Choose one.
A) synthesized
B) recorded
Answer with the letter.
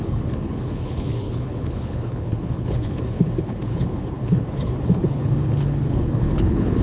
A